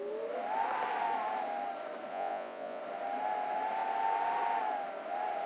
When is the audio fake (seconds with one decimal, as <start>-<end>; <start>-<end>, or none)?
2.1-2.8